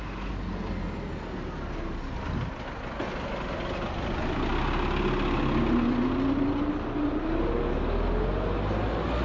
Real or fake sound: real